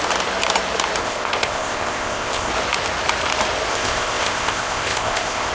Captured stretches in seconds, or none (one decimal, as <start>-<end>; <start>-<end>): 0.0-1.0; 2.5-3.7